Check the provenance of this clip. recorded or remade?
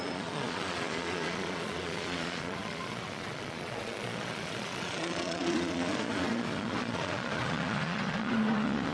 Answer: remade